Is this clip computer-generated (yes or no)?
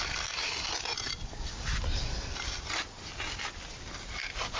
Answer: no